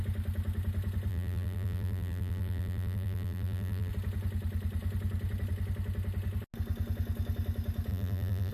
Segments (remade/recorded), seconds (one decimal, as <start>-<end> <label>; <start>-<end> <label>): 0.0-1.1 recorded; 1.1-3.9 remade; 3.9-7.9 recorded; 7.9-8.5 remade